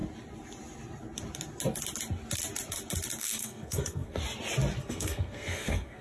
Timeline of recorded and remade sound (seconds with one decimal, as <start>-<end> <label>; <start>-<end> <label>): 0.0-3.2 recorded; 3.2-4.2 remade; 4.2-4.8 recorded; 4.8-6.0 remade